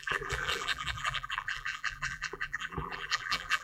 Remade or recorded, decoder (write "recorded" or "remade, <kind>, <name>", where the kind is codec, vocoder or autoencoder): remade, vocoder, BigVGAN v2